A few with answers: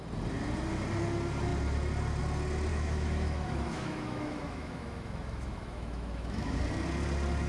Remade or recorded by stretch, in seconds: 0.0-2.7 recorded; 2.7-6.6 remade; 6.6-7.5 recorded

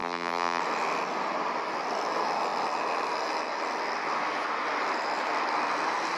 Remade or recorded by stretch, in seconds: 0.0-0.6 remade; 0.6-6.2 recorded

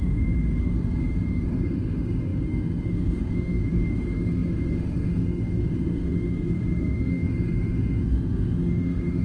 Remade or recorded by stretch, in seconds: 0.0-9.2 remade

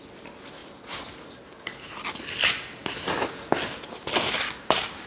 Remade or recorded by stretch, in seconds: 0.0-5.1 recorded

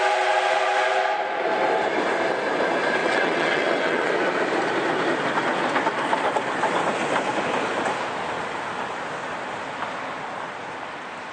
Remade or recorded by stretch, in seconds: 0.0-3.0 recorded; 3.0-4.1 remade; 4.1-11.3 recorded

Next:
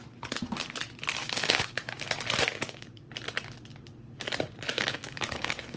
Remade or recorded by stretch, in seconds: 0.0-1.2 recorded; 1.2-2.0 remade; 2.0-2.5 recorded; 2.5-3.1 remade; 3.1-4.7 recorded; 4.7-5.8 remade

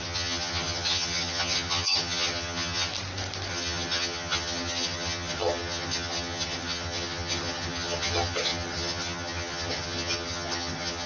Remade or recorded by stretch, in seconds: 0.0-2.9 remade; 2.9-3.5 recorded; 3.5-11.1 remade

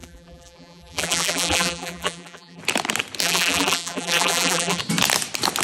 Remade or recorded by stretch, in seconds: 0.0-2.6 remade; 2.6-3.2 recorded; 3.2-4.8 remade; 4.8-5.6 recorded